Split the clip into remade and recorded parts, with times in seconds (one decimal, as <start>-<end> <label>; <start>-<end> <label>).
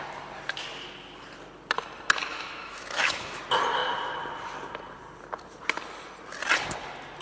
0.0-2.3 recorded; 2.3-3.4 remade; 3.4-7.2 recorded